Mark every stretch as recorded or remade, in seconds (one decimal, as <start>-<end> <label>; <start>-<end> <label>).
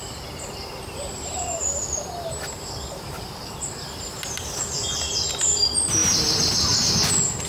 0.0-4.1 remade; 4.1-6.0 recorded; 6.0-6.9 remade; 6.9-7.5 recorded